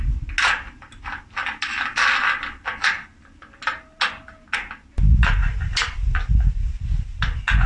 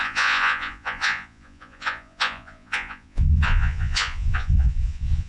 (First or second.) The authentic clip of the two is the first